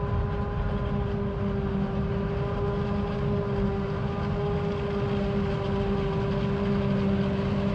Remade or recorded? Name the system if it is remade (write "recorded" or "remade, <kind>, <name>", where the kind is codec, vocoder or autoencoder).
recorded